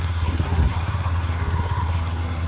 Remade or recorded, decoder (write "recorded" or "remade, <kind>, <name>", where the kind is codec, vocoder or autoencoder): remade, codec, SNAC